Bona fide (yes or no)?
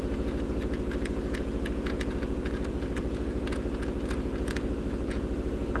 no